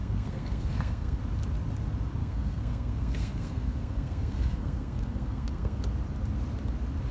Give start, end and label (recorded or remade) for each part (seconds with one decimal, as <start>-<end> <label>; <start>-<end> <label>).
0.0-1.2 remade; 1.2-2.2 recorded; 2.2-5.8 remade; 5.8-7.1 recorded